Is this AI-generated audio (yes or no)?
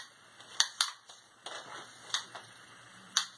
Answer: yes